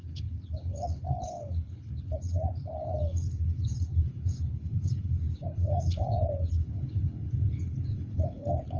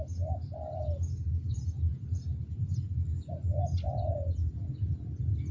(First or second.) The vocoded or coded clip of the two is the first